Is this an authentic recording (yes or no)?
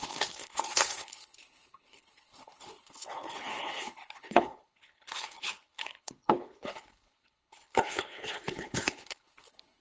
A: no